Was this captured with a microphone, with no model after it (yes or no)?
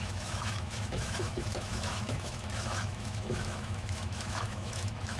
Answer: no